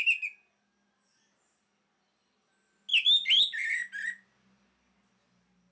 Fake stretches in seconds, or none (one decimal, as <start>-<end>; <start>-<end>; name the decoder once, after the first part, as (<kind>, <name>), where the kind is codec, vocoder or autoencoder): none